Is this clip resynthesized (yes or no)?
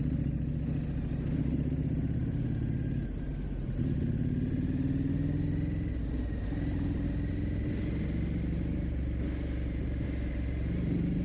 no